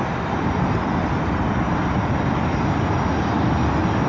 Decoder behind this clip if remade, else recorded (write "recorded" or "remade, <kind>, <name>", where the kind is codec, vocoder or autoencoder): recorded